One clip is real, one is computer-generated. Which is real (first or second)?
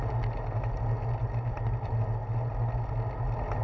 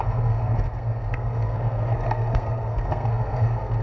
first